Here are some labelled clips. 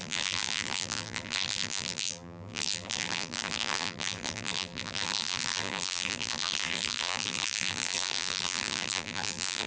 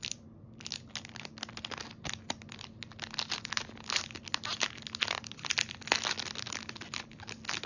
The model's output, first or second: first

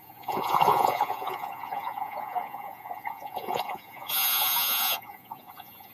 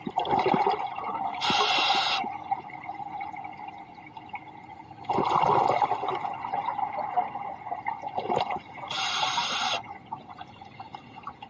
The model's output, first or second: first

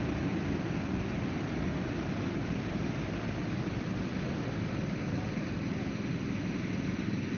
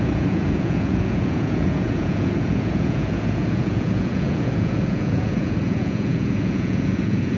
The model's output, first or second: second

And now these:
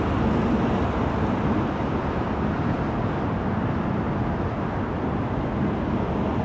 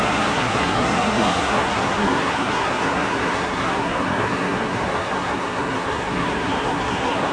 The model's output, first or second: second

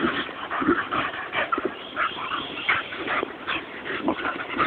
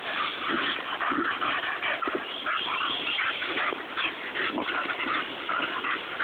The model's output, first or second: first